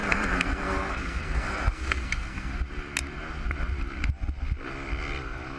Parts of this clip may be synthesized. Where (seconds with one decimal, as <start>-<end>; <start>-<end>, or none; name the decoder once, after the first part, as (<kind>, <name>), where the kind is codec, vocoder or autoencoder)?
0.0-2.5 (codec, SNAC)